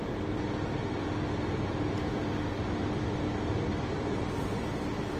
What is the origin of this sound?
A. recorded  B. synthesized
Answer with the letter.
A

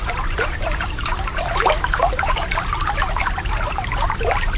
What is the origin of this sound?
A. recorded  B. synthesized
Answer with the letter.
B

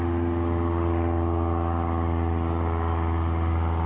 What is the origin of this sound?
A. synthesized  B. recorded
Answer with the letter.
B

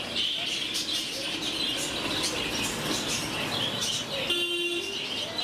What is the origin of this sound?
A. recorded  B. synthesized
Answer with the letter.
A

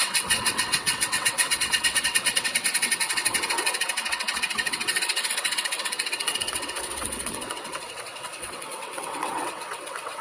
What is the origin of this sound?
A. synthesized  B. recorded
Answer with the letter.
A